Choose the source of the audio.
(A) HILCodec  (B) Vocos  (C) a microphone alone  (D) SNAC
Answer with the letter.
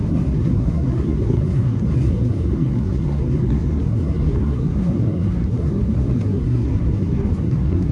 D